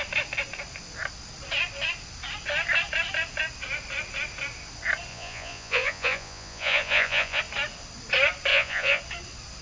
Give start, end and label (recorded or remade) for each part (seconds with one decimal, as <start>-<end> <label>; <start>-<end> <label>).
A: 0.0-5.1 recorded; 5.1-7.4 remade; 7.4-8.5 recorded; 8.5-9.0 remade; 9.0-9.6 recorded